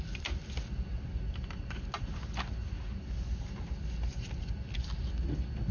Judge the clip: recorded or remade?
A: recorded